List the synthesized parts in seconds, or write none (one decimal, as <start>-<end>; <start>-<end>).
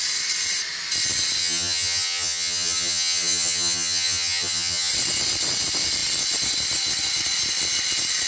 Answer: 1.4-4.9